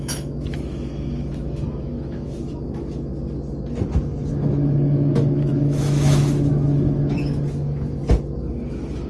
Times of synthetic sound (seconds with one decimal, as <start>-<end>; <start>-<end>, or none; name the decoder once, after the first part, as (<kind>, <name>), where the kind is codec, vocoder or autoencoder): 0.0-3.1 (autoencoder, DAC-VAE); 4.3-8.0; 8.7-9.1